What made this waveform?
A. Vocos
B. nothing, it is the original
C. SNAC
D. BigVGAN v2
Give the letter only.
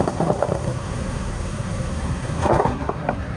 C